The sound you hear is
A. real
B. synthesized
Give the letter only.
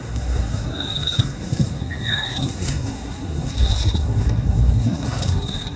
B